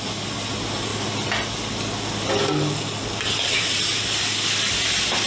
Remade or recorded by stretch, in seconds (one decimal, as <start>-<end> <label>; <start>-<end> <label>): 0.0-5.3 recorded